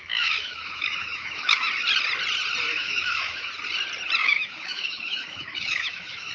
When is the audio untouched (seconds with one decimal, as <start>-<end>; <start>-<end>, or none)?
1.7-2.7; 3.5-4.2